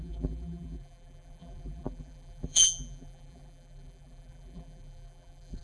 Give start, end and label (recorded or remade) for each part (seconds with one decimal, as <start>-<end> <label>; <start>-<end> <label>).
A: 0.0-5.6 remade